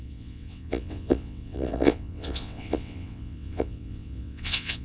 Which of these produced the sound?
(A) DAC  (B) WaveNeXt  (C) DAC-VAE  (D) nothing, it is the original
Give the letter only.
B